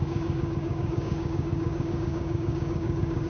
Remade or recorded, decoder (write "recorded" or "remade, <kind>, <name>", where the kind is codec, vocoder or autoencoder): remade, codec, DAC